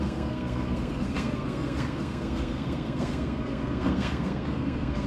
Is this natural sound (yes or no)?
no